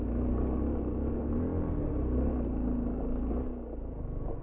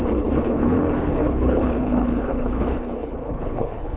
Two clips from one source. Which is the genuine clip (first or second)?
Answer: first